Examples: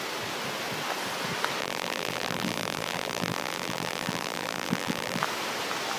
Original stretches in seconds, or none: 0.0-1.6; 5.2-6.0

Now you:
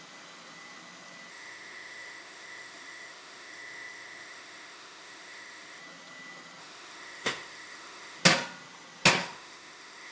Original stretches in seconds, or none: 0.0-1.3; 5.8-6.6; 8.2-9.2